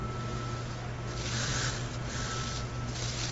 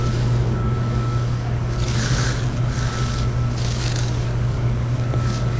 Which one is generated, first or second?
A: second